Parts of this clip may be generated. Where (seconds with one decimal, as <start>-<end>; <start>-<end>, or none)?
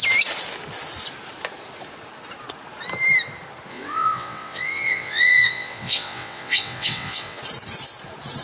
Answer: 3.7-7.4